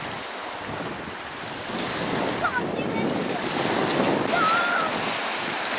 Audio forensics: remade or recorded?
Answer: recorded